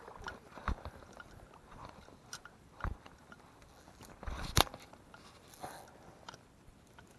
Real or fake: real